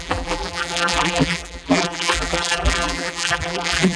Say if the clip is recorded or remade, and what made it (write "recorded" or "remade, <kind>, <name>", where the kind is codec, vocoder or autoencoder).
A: remade, vocoder, BigVGAN v2